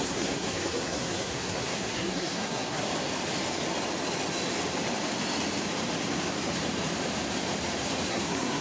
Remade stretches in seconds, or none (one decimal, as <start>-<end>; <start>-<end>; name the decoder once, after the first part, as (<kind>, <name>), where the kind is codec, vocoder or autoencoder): 0.0-2.9 (codec, SNAC); 8.1-8.6